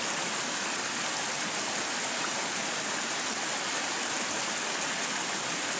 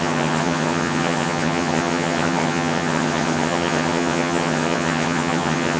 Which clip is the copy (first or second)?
second